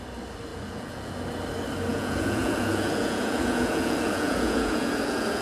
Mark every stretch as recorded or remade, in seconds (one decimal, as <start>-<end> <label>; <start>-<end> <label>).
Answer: 0.0-0.5 recorded; 0.5-1.1 remade; 1.1-1.9 recorded; 1.9-5.4 remade